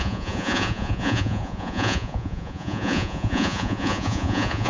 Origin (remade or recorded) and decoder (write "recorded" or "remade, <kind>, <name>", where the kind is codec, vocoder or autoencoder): remade, vocoder, Vocos